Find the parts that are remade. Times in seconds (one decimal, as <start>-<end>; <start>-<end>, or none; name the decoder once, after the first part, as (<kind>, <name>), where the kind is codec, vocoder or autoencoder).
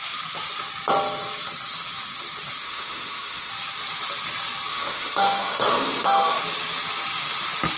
2.6-3.5 (autoencoder, DAC-VAE); 4.7-6.4